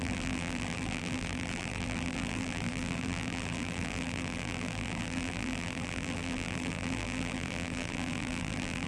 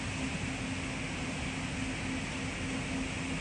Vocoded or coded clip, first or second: first